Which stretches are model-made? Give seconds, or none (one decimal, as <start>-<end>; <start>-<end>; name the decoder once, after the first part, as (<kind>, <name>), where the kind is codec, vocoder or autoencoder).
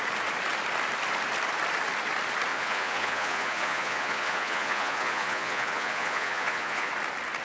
2.5-6.9 (vocoder, Vocos)